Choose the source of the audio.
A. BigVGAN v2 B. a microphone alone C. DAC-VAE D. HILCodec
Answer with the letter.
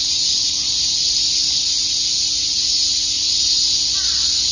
B